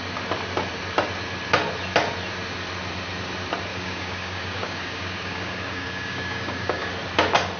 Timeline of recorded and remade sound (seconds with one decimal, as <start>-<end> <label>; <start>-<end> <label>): 0.0-3.7 recorded; 3.7-6.9 remade; 6.9-7.6 recorded